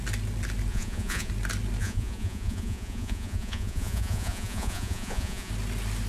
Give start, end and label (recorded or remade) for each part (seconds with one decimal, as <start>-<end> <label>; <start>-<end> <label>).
0.0-0.7 recorded; 0.7-1.3 remade; 1.3-1.8 recorded; 1.8-5.5 remade; 5.5-6.1 recorded